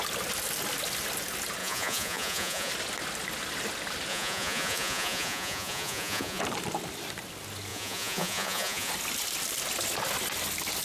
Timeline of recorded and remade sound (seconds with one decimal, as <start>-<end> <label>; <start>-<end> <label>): 0.0-1.6 recorded; 1.6-2.7 remade; 2.7-4.1 recorded; 4.1-6.4 remade; 6.4-7.7 recorded; 7.7-8.9 remade; 8.9-10.8 recorded